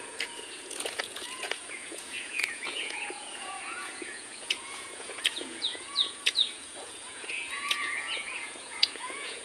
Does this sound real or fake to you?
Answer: fake